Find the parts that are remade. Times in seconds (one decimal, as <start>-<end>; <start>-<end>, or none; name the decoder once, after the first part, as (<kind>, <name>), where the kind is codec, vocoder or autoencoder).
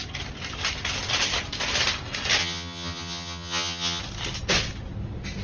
2.4-4.0 (vocoder, HiFi-GAN)